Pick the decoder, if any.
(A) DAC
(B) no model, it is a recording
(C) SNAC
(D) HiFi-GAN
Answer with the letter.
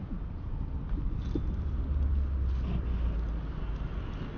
B